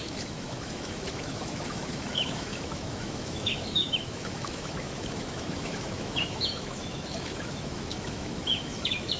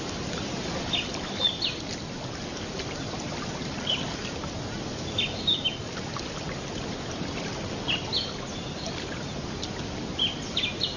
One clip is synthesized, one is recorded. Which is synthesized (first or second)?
first